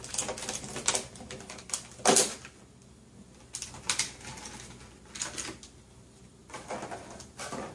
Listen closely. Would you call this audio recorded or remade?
recorded